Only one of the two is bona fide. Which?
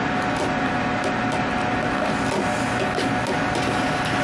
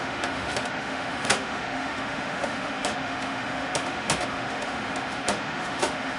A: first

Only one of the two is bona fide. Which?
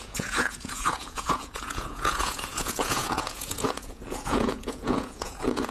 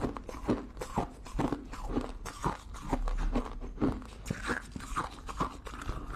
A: second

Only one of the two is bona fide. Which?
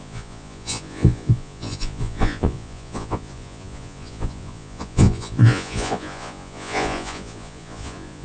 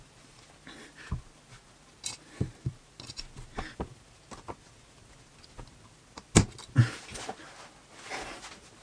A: second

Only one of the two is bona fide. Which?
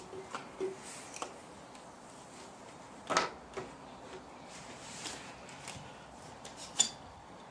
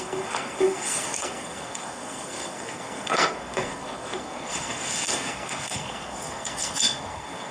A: first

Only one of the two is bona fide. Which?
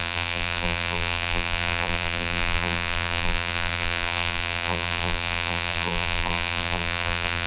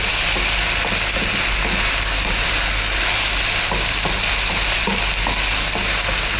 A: second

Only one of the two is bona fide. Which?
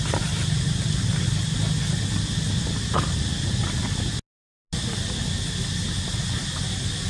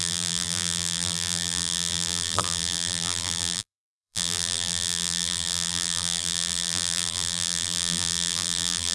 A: first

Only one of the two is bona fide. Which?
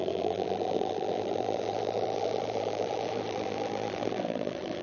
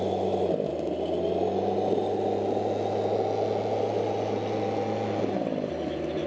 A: second